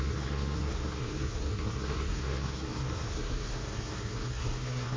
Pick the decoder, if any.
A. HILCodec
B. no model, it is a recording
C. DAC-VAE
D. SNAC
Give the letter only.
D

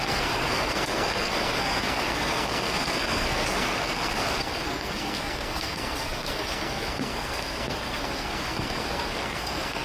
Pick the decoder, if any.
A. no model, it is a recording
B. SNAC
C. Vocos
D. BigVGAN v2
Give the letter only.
B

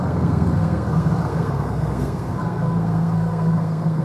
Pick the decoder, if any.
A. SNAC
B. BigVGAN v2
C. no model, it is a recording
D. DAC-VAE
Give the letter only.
A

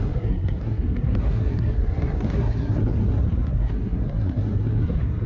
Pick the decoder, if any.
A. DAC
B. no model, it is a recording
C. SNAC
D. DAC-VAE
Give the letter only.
C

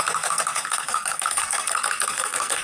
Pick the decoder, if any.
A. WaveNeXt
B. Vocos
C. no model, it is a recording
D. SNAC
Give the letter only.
D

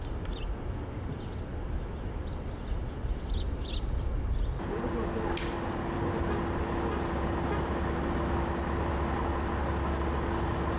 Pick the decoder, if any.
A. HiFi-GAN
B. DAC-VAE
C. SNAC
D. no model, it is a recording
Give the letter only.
D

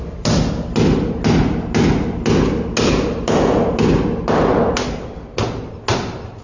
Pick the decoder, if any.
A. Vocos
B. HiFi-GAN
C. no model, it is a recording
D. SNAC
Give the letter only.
C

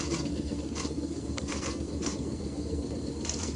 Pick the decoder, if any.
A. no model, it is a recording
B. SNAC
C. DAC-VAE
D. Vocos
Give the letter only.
B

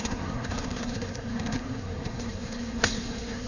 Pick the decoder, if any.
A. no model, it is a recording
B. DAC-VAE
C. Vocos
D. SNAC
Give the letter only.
D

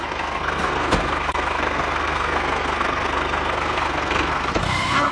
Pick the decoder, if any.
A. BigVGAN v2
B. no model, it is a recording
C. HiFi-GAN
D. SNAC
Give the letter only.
D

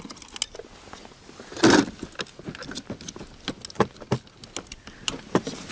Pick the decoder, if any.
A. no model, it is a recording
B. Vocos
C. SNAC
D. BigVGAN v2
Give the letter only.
A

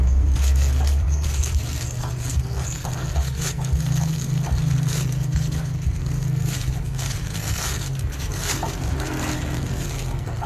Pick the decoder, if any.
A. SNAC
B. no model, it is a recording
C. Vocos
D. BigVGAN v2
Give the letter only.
A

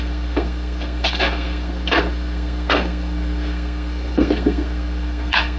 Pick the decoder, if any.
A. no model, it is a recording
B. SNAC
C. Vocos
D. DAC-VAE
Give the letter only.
B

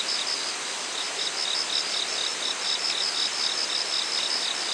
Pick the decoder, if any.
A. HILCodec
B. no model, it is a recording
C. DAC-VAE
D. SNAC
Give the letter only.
B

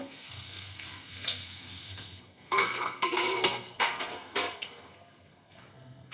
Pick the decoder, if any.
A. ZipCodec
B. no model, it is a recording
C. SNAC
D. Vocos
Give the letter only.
C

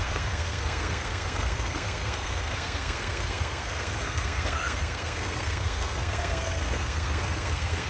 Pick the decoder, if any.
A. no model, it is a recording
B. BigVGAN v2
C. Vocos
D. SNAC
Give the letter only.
D